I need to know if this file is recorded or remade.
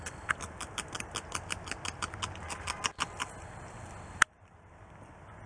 recorded